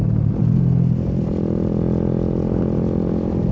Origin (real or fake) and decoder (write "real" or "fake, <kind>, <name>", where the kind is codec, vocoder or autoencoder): real